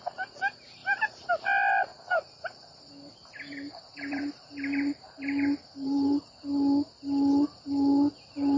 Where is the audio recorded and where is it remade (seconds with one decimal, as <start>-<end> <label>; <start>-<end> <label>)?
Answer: 0.0-0.8 recorded; 0.8-1.3 remade; 1.3-1.9 recorded; 1.9-2.8 remade; 2.8-3.2 recorded; 3.2-6.2 remade; 6.2-8.6 recorded